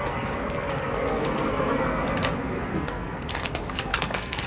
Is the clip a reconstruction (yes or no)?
yes